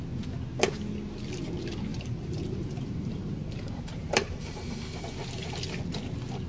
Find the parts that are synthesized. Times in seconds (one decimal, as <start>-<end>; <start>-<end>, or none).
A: 1.9-5.0